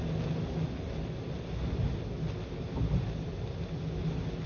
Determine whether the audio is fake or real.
real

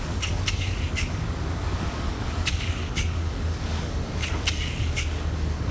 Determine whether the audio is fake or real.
fake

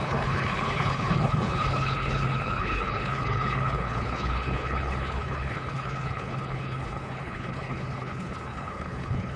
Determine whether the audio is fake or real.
fake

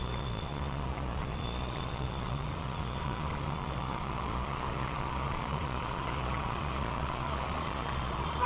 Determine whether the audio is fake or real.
fake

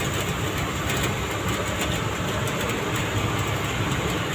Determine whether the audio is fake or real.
real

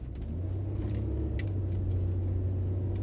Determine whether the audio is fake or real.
real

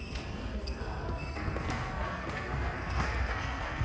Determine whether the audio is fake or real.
fake